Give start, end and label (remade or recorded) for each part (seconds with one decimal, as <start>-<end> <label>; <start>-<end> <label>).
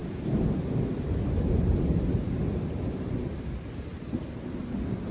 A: 0.0-3.1 remade; 3.1-3.9 recorded; 3.9-5.1 remade